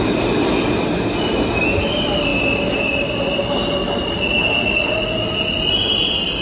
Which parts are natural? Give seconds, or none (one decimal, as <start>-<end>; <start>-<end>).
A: 0.0-6.4